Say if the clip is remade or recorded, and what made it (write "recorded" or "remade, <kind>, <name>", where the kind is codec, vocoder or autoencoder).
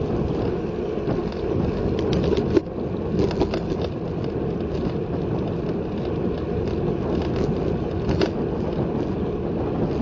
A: recorded